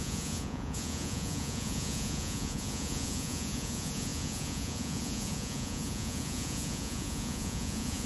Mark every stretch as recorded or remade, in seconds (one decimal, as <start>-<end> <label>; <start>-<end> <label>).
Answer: 0.0-8.1 remade

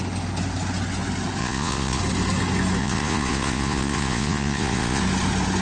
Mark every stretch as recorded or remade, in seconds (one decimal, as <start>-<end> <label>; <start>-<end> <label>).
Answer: 0.0-1.4 recorded; 1.4-2.0 remade; 2.0-2.8 recorded; 2.8-5.0 remade; 5.0-5.6 recorded

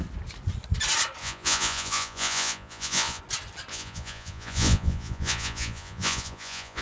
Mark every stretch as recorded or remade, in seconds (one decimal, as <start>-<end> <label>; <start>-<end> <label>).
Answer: 0.0-1.2 recorded; 1.2-3.2 remade; 3.2-3.7 recorded; 3.7-6.8 remade